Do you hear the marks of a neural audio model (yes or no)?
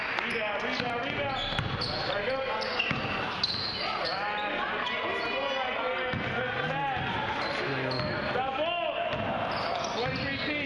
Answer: no